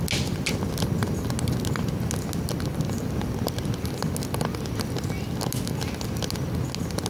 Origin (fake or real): real